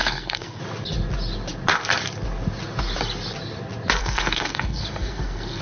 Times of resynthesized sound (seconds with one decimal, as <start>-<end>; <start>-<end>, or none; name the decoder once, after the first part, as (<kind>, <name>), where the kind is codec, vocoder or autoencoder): 0.0-0.6 (codec, SNAC); 4.0-5.6